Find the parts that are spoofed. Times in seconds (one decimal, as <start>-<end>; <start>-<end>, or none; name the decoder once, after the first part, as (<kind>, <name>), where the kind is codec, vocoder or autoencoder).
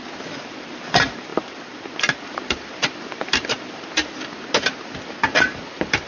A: 0.0-6.1 (vocoder, BigVGAN v2)